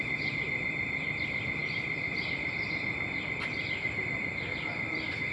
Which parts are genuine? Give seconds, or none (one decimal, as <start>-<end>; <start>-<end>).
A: 0.0-5.3